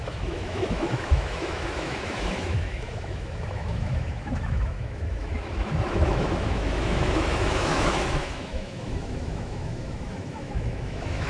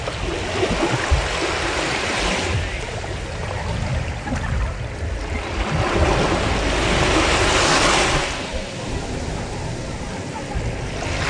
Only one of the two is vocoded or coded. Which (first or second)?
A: first